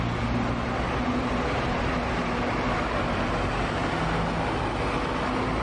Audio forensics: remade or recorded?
recorded